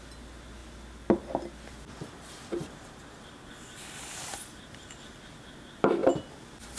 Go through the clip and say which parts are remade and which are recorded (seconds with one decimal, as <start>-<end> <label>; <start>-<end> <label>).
0.0-6.8 recorded